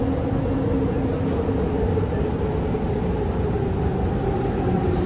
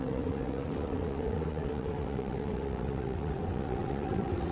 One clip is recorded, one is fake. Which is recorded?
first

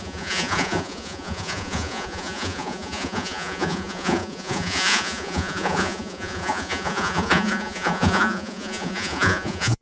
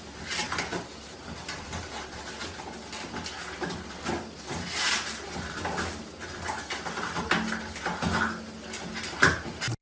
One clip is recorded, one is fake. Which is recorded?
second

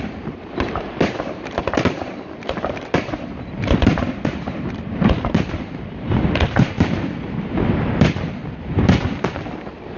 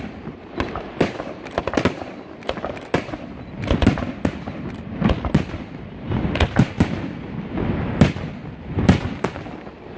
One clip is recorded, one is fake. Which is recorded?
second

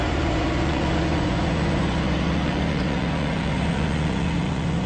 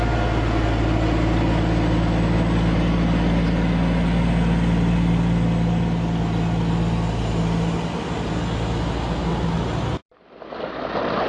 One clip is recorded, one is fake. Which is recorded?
second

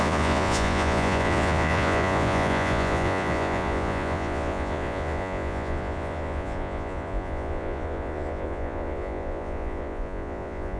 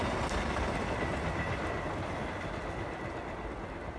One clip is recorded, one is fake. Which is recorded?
second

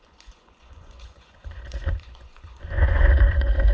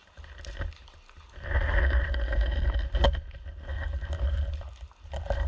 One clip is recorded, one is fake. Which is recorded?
second